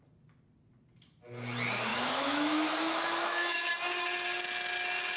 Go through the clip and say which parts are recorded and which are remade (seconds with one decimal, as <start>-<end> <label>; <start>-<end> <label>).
0.0-1.9 recorded; 1.9-3.7 remade; 3.7-5.2 recorded